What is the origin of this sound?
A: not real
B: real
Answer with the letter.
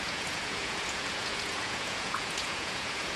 A